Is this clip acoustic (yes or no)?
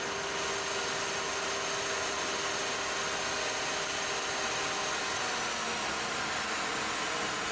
yes